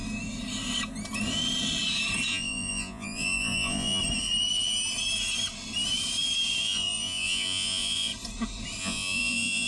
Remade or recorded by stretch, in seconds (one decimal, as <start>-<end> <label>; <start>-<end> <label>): 0.0-2.3 recorded; 2.3-4.0 remade; 4.0-6.6 recorded; 6.6-8.1 remade; 8.1-8.8 recorded; 8.8-9.7 remade